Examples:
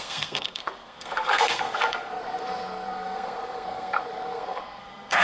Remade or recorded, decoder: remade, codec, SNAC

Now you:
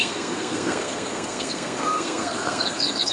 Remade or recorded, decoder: remade, codec, SNAC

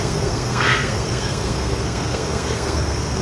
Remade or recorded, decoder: remade, codec, SNAC